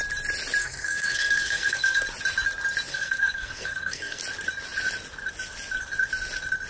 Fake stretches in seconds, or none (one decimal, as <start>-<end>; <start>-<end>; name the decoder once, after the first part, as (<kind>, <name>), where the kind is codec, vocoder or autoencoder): 0.6-2.0 (codec, SNAC); 2.9-4.2